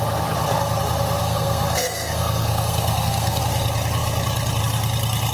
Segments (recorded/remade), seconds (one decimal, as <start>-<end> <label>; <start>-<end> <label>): 0.0-1.2 recorded; 1.2-3.4 remade; 3.4-5.3 recorded